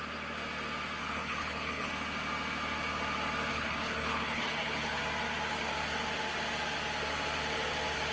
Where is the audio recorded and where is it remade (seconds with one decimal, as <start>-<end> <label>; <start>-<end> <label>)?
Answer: 0.0-1.0 recorded; 1.0-1.9 remade; 1.9-3.5 recorded; 3.5-5.0 remade; 5.0-8.1 recorded